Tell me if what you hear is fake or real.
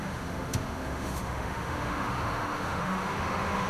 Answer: fake